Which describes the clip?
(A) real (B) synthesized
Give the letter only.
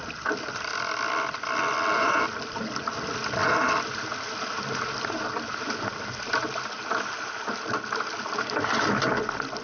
A